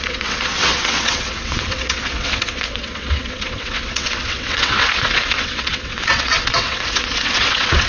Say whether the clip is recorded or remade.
remade